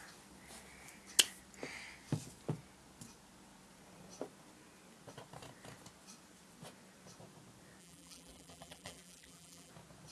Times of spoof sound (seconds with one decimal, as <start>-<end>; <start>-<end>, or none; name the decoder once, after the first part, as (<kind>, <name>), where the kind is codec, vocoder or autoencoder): 7.8-9.7 (vocoder, BigVGAN v2)